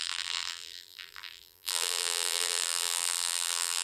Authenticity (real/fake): fake